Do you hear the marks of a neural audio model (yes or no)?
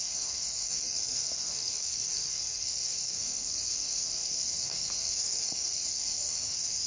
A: yes